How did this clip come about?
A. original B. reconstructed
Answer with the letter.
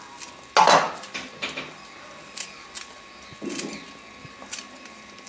A